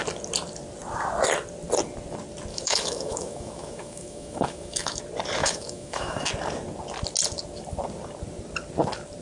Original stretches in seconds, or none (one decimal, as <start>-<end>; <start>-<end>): 0.0-2.5; 5.0-5.4; 6.3-9.2